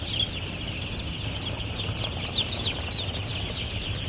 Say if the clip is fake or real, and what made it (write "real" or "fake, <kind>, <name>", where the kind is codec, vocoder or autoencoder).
real